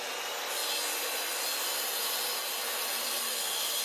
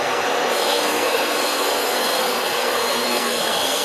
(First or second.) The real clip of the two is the first